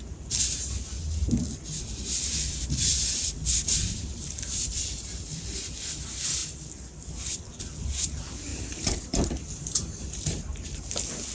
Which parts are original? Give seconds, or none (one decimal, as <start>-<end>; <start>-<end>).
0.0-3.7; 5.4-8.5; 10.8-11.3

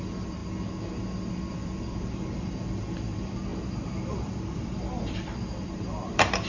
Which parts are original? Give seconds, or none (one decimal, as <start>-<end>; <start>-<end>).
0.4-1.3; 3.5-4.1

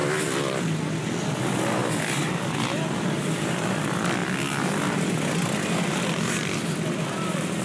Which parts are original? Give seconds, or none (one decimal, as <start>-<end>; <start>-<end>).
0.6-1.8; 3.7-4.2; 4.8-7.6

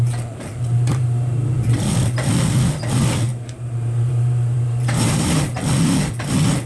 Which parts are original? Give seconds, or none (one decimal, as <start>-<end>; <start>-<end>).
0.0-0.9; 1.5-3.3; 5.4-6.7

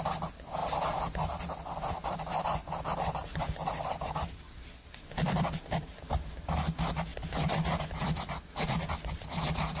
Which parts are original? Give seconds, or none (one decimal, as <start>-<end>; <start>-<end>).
0.0-3.2; 5.8-7.1; 8.2-9.8

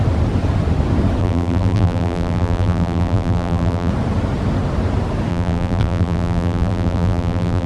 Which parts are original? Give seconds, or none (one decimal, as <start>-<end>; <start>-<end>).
0.0-1.2; 3.9-5.3

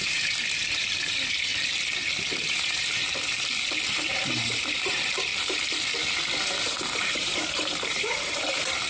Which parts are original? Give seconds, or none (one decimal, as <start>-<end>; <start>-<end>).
1.5-2.4; 3.0-3.9; 5.3-7.0